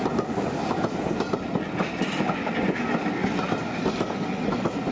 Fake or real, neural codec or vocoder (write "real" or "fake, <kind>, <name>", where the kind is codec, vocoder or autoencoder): real